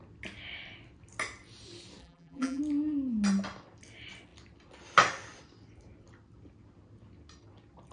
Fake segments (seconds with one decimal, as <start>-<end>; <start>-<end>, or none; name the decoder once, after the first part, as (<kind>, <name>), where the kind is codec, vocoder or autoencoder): 2.0-2.6 (vocoder, BigVGAN v2)